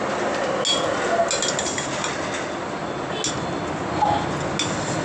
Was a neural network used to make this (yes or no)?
no